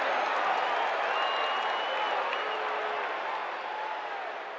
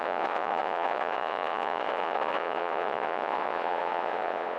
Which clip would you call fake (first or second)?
second